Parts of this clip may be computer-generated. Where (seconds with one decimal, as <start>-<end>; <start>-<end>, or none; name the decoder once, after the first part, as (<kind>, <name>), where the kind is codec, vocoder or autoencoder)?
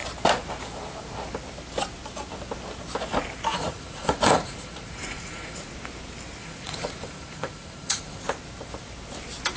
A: 3.5-5.7 (vocoder, Vocos); 6.4-8.2